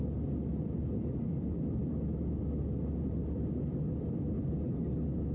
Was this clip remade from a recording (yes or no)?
no